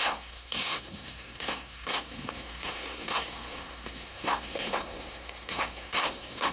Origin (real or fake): fake